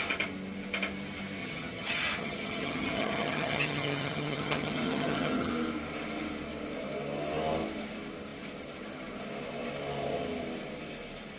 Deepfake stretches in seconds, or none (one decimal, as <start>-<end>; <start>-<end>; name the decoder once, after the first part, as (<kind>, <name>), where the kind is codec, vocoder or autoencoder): 1.4-5.5 (vocoder, HiFi-GAN)

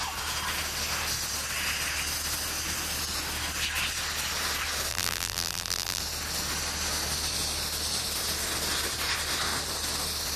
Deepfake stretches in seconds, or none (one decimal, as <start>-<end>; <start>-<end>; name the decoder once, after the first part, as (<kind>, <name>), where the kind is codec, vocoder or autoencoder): 4.9-6.0 (vocoder, BigVGAN v2)

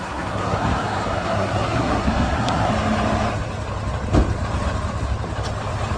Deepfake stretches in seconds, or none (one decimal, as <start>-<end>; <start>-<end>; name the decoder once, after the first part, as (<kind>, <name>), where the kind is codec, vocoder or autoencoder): 0.0-2.7 (codec, SNAC)

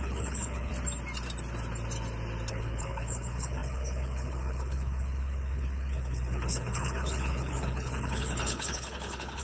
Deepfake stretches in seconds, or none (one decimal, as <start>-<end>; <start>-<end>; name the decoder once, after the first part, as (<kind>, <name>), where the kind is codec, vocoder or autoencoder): 0.0-0.7 (codec, HILCodec); 2.5-9.4

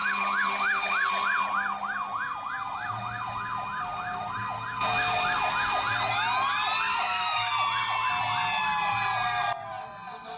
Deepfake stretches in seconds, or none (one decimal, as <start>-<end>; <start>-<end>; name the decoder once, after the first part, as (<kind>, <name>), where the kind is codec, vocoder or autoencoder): 6.9-7.5 (codec, DAC)